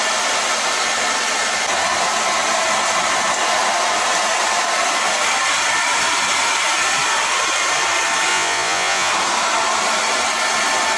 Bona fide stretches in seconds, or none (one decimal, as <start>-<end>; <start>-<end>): 0.0-8.3; 9.1-11.0